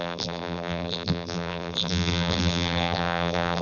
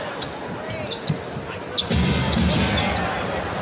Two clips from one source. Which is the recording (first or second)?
second